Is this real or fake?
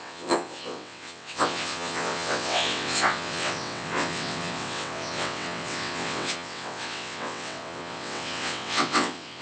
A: fake